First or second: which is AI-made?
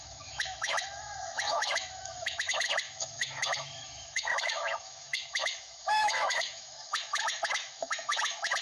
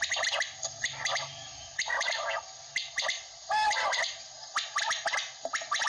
first